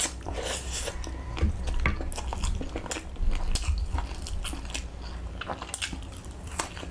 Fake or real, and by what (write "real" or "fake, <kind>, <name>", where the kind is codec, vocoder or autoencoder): real